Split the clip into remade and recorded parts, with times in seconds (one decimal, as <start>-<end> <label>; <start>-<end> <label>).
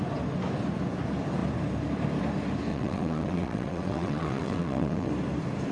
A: 0.0-2.7 recorded; 2.7-5.1 remade; 5.1-5.7 recorded